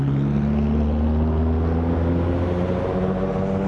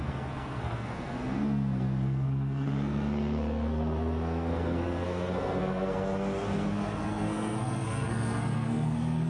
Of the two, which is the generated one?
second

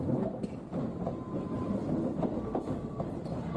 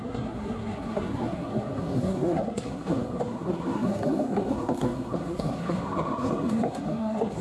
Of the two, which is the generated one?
second